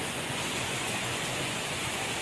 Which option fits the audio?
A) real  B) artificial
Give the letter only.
B